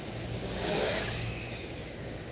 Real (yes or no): no